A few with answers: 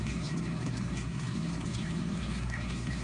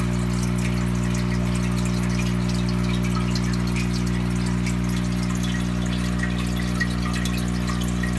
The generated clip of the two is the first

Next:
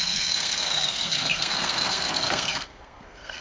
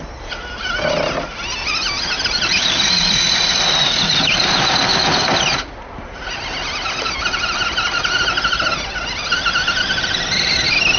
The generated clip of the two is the first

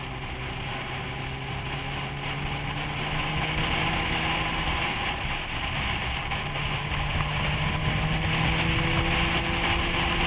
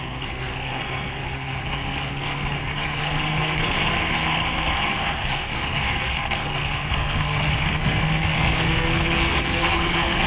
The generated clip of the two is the second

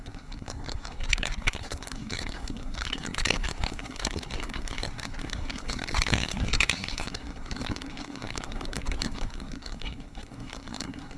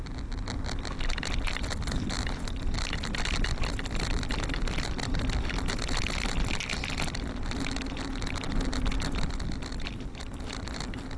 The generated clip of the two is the first